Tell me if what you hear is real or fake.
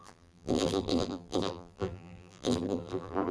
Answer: fake